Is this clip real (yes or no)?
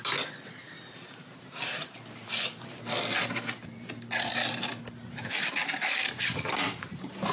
yes